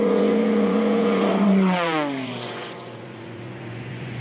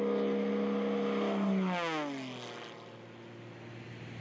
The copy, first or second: first